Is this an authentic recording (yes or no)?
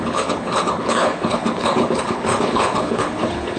no